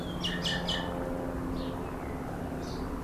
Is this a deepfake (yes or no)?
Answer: no